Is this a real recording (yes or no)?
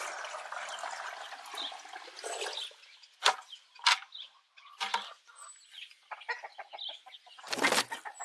yes